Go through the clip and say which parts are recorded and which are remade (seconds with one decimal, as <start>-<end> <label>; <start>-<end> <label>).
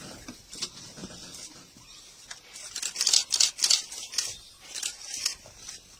0.0-1.0 remade; 1.0-4.6 recorded; 4.6-6.0 remade